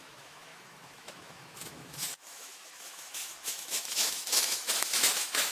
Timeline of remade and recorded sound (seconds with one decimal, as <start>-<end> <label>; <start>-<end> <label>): 0.0-5.5 remade